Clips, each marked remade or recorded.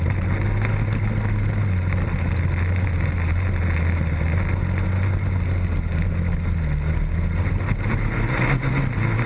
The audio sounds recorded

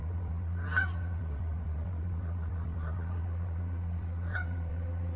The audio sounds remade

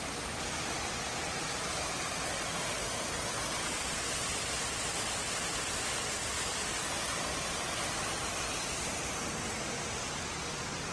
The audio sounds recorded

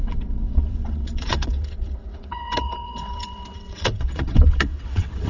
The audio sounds remade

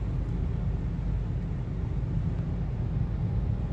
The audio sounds recorded